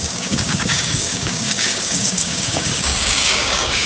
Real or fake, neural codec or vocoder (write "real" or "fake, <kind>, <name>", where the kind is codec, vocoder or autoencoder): fake, codec, DAC